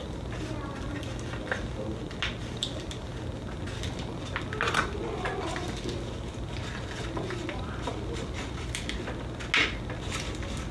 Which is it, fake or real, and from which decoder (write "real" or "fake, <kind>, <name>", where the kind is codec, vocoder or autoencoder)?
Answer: real